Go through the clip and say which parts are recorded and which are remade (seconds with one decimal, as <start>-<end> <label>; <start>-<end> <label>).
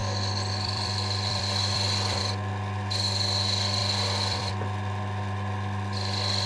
0.0-2.2 remade; 2.2-3.8 recorded; 3.8-4.5 remade; 4.5-6.5 recorded